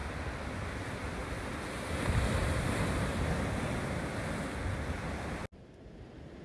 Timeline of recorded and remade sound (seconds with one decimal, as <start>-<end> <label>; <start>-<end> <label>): 0.0-6.4 recorded